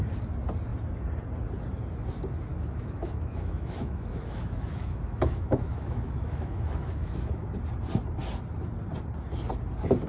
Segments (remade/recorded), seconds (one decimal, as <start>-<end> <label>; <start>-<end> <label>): 0.0-2.5 recorded; 2.5-7.4 remade; 7.4-10.1 recorded

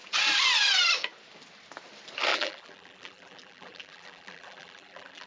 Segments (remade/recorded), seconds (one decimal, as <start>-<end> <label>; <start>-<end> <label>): 0.0-2.3 recorded; 2.3-5.3 remade

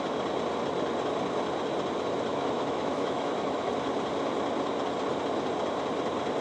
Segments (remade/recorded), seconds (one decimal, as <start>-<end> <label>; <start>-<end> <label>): 0.0-2.3 recorded; 2.3-3.7 remade; 3.7-6.4 recorded